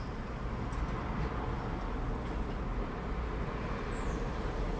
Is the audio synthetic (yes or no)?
no